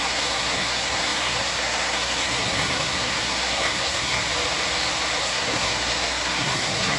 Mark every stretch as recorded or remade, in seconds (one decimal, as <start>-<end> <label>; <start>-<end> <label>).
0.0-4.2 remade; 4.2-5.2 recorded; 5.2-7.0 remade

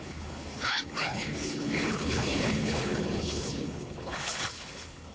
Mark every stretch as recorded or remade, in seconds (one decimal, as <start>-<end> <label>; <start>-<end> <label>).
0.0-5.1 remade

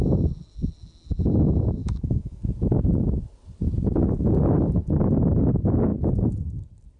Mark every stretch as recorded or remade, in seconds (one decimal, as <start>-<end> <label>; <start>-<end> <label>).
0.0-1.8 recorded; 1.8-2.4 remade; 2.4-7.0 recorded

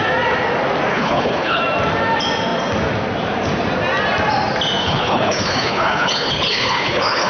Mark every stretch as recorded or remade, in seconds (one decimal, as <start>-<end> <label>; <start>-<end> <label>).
0.0-0.9 recorded; 0.9-1.6 remade; 1.6-4.8 recorded; 4.8-7.3 remade

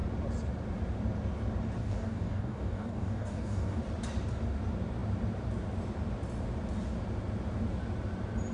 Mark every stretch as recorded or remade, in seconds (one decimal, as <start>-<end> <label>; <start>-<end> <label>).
0.0-1.8 recorded; 1.8-3.8 remade; 3.8-8.5 recorded

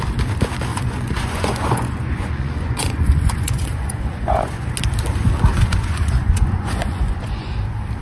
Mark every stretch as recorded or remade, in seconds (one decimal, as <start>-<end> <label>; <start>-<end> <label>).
0.0-0.7 recorded; 0.7-4.7 remade; 4.7-5.5 recorded; 5.5-7.5 remade; 7.5-8.0 recorded

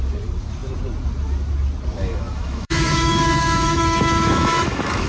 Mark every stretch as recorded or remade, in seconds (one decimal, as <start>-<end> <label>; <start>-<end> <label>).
0.0-2.0 recorded; 2.0-5.1 remade

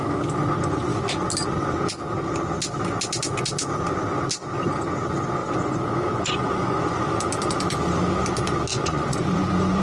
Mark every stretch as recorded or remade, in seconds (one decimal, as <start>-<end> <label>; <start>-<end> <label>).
0.0-5.4 recorded; 5.4-7.1 remade; 7.1-8.7 recorded; 8.7-9.8 remade